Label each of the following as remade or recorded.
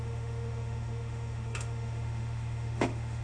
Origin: remade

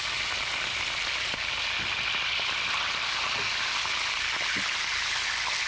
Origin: recorded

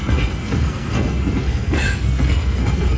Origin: remade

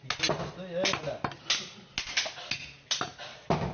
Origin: recorded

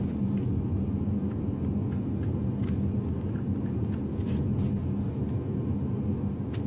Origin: recorded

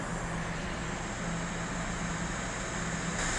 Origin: recorded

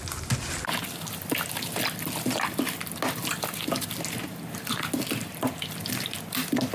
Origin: recorded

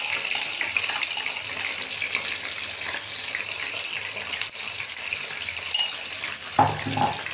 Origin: recorded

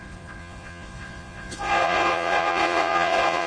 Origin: remade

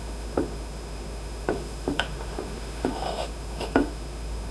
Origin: remade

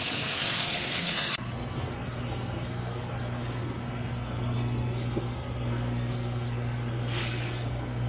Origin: remade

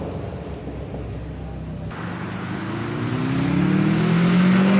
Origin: recorded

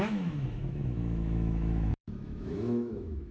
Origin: remade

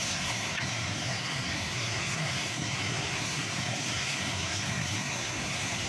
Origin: remade